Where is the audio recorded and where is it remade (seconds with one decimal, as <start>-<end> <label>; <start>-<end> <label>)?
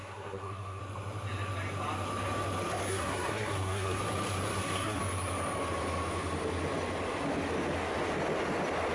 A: 0.0-0.8 remade; 0.8-2.9 recorded; 2.9-4.0 remade; 4.0-4.5 recorded; 4.5-5.0 remade; 5.0-8.9 recorded